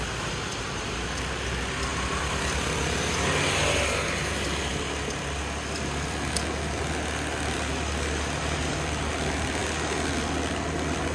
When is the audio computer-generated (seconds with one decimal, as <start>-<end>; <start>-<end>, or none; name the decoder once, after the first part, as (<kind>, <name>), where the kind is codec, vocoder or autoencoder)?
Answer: none